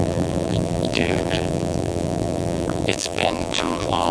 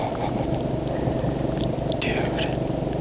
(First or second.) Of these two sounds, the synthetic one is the first